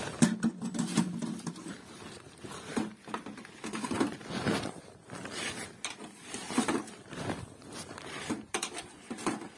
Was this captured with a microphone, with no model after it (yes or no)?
yes